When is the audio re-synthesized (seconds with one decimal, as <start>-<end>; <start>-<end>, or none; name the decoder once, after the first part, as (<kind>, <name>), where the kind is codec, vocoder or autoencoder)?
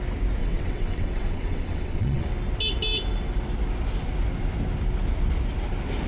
0.4-2.3 (vocoder, WaveNeXt)